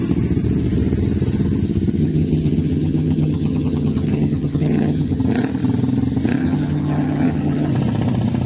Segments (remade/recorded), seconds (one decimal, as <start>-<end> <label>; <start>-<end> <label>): 0.0-2.0 recorded; 2.0-5.2 remade; 5.2-6.4 recorded; 6.4-7.7 remade; 7.7-8.5 recorded